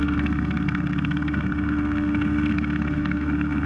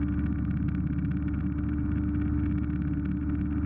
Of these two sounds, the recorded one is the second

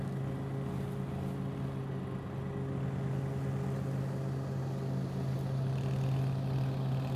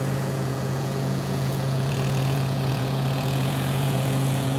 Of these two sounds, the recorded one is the first